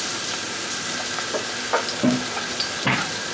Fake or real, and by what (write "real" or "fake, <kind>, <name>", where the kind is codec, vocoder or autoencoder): real